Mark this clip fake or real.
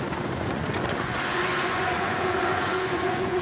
fake